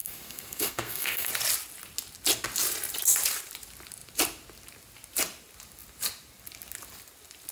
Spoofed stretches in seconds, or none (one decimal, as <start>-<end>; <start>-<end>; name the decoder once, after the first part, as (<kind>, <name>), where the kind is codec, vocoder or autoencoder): 0.0-1.3 (codec, SNAC)